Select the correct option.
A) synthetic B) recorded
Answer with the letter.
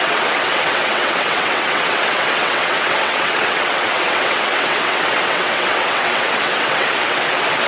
A